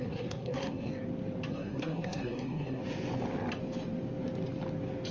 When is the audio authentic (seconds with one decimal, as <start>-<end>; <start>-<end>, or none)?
0.9-1.5; 2.8-5.1